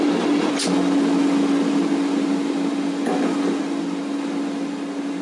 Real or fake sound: real